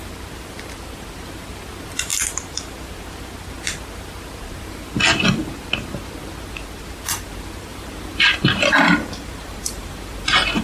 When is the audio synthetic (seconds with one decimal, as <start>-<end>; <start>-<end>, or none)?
7.7-10.6